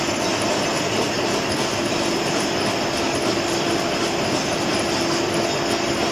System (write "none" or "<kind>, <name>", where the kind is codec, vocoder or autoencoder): none